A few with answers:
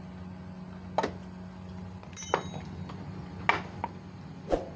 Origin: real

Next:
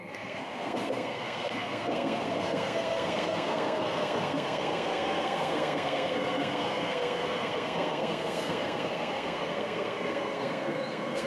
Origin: fake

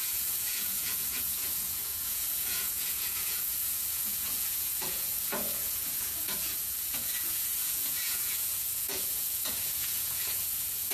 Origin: fake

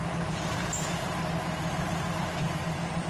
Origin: fake